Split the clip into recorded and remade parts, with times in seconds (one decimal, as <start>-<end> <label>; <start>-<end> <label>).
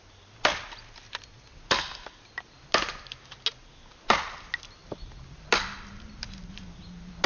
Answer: 0.0-7.3 recorded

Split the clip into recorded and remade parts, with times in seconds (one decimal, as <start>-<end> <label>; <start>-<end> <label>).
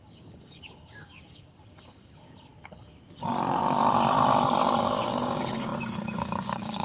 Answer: 0.0-2.5 remade; 2.5-4.8 recorded; 4.8-6.8 remade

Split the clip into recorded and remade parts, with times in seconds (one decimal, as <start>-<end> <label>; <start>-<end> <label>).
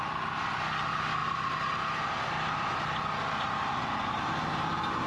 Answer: 0.0-5.1 recorded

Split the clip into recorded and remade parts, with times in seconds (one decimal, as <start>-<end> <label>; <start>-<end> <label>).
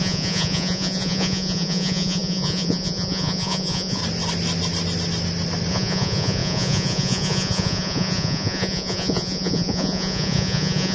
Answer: 0.0-4.0 remade; 4.0-5.7 recorded; 5.7-10.9 remade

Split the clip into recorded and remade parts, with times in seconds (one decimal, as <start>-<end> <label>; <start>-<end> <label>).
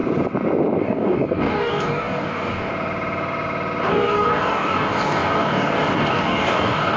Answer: 0.0-0.8 recorded; 0.8-2.7 remade; 2.7-3.9 recorded; 3.9-7.0 remade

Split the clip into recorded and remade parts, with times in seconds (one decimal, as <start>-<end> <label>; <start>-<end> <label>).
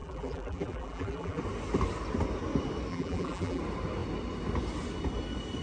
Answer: 0.0-1.4 remade; 1.4-2.9 recorded; 2.9-3.6 remade; 3.6-5.6 recorded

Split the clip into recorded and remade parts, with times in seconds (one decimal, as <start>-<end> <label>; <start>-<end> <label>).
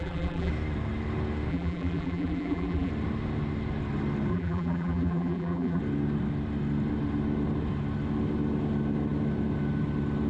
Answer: 0.0-0.5 remade; 0.5-1.5 recorded; 1.5-2.9 remade; 2.9-4.3 recorded; 4.3-5.8 remade; 5.8-10.3 recorded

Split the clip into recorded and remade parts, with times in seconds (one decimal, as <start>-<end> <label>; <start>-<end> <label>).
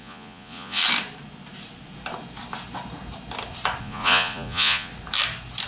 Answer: 0.0-0.8 remade; 0.8-3.8 recorded; 3.8-4.9 remade; 4.9-5.7 recorded